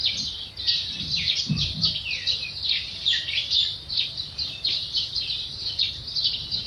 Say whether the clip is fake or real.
fake